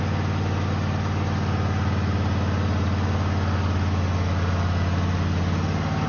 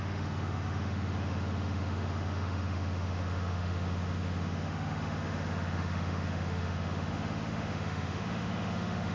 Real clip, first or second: first